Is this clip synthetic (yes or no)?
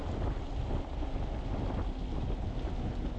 no